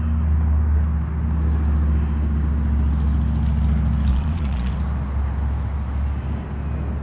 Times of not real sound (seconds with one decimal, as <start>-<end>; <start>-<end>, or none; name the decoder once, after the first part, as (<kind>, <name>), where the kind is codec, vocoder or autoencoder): 4.1-4.7 (vocoder, Vocos)